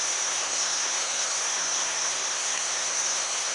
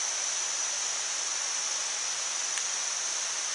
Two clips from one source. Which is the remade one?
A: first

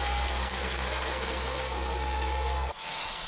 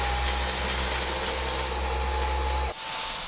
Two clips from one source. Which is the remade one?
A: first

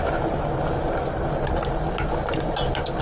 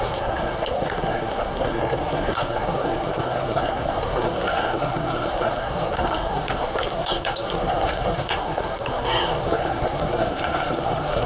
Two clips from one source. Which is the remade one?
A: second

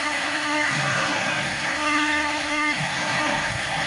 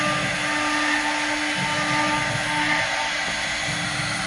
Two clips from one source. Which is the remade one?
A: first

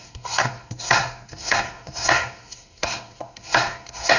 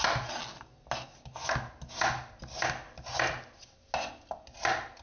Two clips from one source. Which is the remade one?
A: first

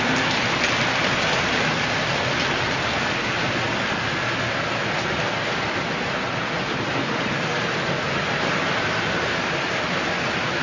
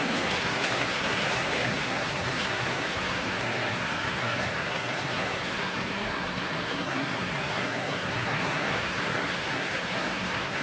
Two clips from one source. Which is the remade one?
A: second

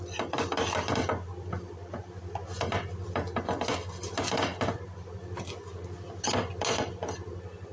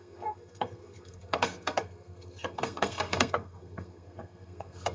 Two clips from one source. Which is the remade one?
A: second